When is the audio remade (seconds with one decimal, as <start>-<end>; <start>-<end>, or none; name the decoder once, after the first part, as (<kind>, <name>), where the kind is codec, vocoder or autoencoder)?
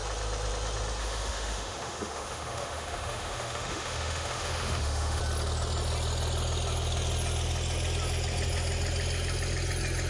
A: 1.0-5.2 (autoencoder, DAC-VAE)